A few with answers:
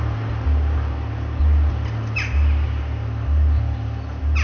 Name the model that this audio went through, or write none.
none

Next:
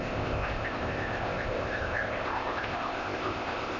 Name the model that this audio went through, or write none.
codec, ZipCodec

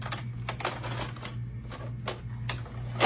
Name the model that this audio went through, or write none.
none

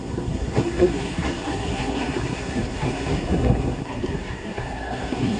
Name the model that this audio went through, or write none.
codec, SNAC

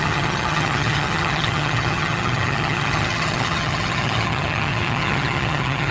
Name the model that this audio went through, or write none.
vocoder, HiFi-GAN